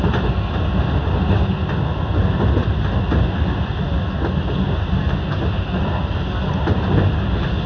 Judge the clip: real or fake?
real